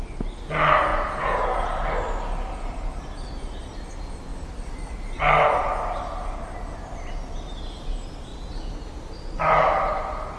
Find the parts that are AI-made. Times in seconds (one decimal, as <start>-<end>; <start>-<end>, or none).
0.9-1.7; 8.3-8.9